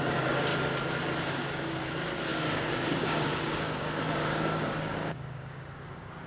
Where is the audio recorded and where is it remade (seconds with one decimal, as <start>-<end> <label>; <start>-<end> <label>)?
0.0-0.5 remade; 0.5-1.2 recorded; 1.2-6.3 remade